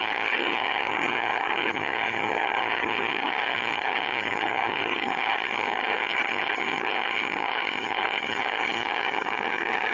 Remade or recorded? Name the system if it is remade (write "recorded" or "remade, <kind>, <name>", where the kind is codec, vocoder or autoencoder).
remade, vocoder, HiFi-GAN